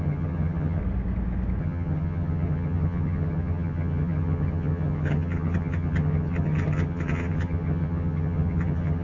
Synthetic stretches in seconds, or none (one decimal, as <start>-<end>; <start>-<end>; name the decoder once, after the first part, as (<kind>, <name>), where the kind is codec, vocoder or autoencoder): 0.0-0.8 (vocoder, HiFi-GAN); 1.6-9.0